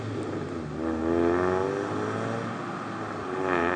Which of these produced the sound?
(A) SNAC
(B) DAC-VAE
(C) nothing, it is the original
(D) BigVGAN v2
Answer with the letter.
C